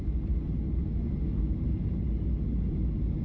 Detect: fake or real real